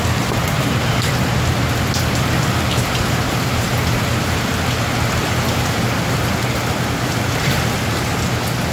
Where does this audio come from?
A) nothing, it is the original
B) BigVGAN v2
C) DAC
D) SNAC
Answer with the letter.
A